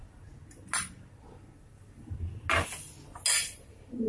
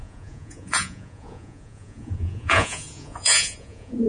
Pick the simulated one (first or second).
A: second